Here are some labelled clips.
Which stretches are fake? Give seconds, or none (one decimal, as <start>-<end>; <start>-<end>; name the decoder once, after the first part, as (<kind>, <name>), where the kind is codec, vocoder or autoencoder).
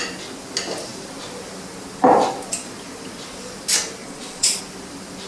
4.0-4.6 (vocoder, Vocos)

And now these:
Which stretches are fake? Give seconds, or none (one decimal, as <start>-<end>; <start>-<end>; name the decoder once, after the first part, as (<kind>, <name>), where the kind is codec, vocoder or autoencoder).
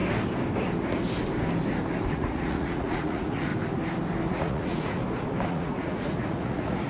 2.1-3.5 (vocoder, Vocos); 4.3-5.0; 5.5-6.9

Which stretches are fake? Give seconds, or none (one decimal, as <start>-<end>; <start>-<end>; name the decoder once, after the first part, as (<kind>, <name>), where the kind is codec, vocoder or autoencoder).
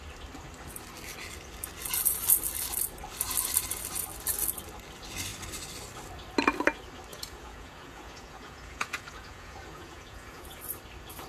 7.1-10.6 (vocoder, Vocos)